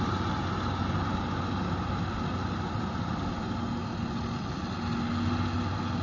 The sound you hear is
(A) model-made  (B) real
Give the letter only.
B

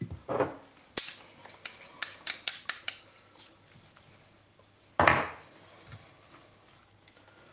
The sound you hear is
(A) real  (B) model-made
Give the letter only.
A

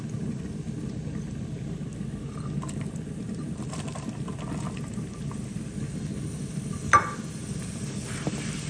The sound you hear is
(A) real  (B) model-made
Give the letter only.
A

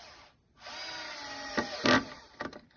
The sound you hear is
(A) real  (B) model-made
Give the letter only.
A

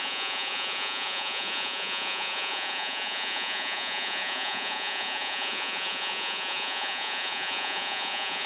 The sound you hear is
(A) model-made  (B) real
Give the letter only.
A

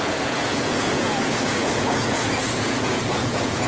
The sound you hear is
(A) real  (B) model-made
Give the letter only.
B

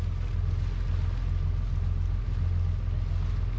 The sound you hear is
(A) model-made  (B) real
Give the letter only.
B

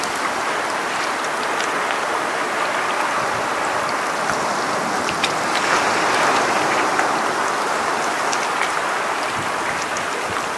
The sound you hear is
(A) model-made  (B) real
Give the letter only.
B